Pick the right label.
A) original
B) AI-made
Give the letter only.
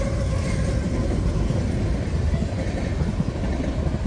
A